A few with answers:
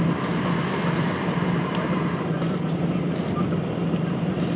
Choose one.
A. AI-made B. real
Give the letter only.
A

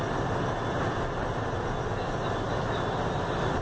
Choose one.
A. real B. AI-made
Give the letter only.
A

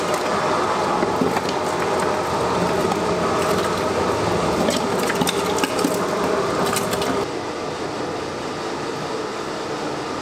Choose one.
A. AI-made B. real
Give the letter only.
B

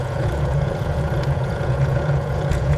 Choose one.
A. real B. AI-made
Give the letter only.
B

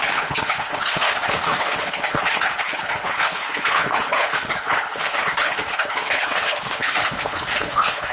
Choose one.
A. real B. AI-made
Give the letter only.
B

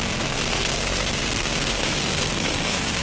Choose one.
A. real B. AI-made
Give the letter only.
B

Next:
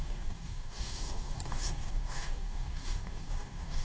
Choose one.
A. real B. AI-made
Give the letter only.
B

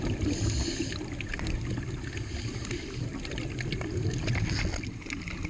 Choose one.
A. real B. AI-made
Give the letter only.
A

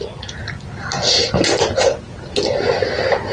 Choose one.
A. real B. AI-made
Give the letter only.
A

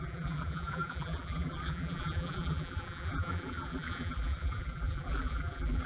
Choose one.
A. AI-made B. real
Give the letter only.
A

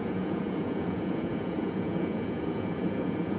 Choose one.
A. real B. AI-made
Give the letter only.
B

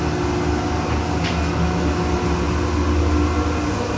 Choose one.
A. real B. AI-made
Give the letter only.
A